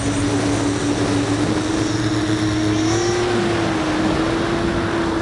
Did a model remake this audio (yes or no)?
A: no